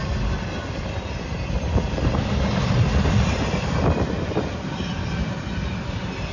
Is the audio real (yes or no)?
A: no